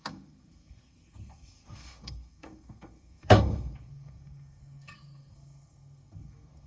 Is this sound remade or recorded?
remade